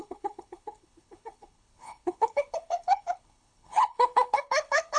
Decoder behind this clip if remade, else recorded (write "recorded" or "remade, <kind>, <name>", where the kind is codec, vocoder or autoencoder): remade, codec, HILCodec